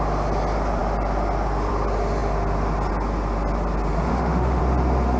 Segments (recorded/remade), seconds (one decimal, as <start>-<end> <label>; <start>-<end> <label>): 0.0-4.1 recorded; 4.1-4.6 remade; 4.6-5.2 recorded